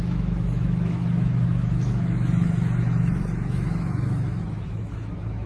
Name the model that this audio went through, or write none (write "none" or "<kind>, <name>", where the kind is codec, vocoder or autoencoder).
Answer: autoencoder, DAC-VAE